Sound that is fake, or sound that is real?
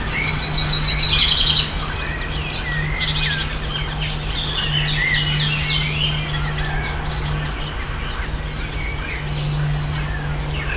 real